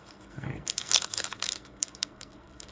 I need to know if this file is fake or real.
fake